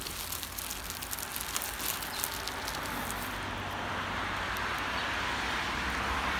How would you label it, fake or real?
real